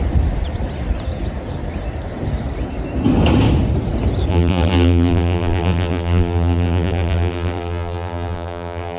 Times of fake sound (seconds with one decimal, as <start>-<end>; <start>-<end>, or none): 4.3-9.0